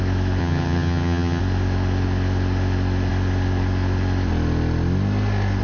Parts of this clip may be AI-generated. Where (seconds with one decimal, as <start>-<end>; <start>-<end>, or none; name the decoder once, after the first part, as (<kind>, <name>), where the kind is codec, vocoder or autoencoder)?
0.4-1.4 (vocoder, HiFi-GAN)